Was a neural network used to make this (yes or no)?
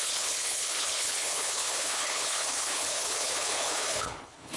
yes